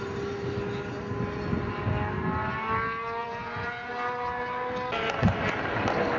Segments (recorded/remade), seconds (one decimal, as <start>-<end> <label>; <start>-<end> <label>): 0.0-3.2 recorded; 3.2-3.9 remade; 3.9-6.2 recorded